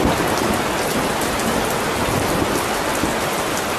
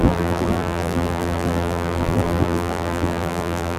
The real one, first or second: first